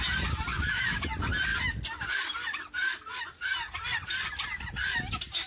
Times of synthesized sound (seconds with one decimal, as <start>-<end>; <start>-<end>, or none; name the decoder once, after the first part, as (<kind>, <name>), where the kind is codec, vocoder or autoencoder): 0.5-1.0 (autoencoder, DAC-VAE)